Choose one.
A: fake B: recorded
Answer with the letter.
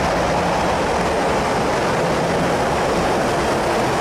B